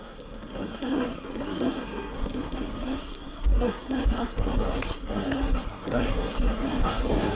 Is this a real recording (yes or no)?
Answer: no